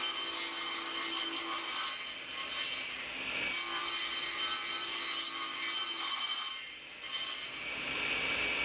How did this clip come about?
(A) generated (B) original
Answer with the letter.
B